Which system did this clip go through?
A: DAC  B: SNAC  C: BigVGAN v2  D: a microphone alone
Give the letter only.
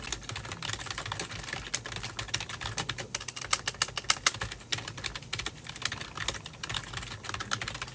D